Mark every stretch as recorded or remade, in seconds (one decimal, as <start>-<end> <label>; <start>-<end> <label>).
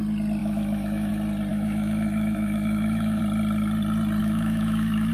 0.0-0.4 recorded; 0.4-1.1 remade; 1.1-1.5 recorded; 1.5-3.2 remade; 3.2-4.2 recorded; 4.2-5.1 remade